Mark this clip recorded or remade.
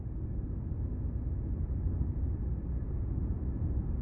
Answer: recorded